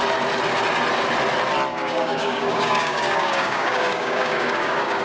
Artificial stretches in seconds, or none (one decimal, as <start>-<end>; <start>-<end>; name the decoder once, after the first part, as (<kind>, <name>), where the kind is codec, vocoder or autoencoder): 1.7-5.0 (codec, DAC)